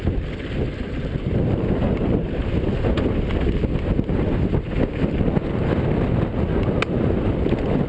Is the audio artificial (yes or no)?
no